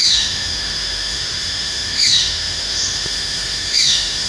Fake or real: fake